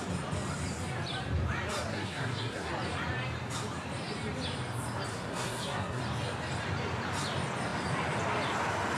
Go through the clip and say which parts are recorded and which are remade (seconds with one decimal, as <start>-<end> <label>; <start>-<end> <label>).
0.0-1.9 recorded; 1.9-2.7 remade; 2.7-5.1 recorded; 5.1-6.0 remade; 6.0-9.0 recorded